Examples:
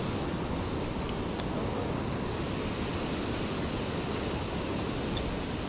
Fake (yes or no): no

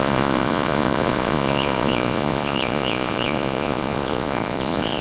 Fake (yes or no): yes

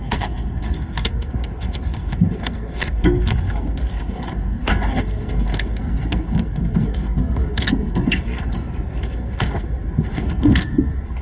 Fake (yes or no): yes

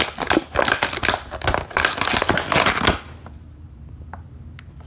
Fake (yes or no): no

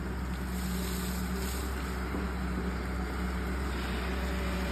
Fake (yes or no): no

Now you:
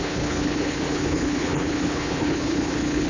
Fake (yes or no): yes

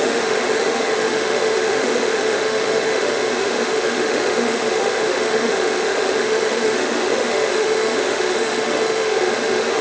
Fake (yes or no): yes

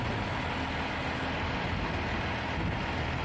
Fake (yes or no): no